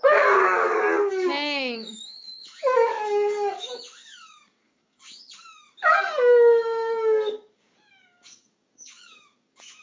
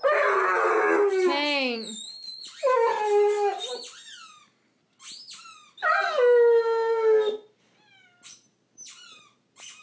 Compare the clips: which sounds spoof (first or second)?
first